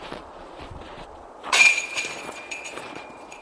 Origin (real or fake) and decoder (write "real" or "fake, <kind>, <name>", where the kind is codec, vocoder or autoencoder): fake, vocoder, Vocos